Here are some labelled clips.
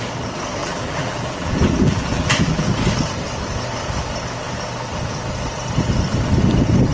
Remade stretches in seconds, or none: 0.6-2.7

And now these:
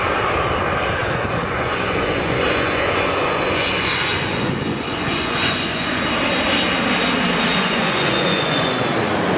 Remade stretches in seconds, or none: 1.0-6.0; 7.5-8.8